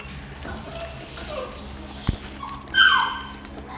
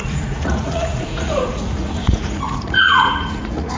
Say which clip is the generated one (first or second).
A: second